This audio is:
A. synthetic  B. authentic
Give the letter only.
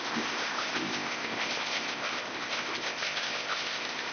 A